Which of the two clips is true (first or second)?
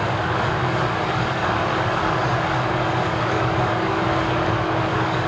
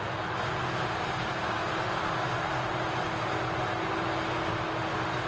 second